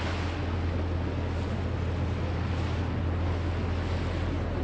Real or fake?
real